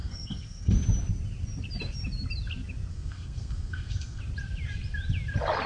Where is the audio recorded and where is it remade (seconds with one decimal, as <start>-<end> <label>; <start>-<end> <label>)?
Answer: 0.0-0.7 remade; 0.7-2.9 recorded; 2.9-4.2 remade; 4.2-5.7 recorded